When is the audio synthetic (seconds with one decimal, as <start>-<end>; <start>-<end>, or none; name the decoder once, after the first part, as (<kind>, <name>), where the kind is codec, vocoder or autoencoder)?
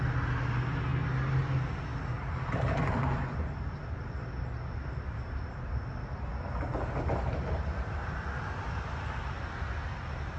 none